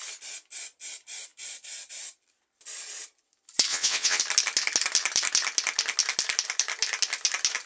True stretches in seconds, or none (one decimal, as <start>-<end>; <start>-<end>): 0.0-3.7; 4.2-7.7